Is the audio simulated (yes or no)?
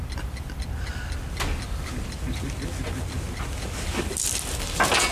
no